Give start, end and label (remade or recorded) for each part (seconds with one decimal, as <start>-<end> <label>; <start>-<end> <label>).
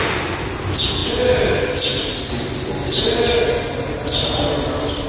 0.0-5.1 recorded